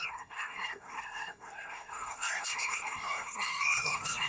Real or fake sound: fake